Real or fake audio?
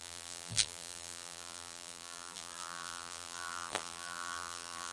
fake